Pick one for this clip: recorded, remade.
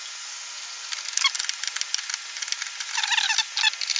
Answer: recorded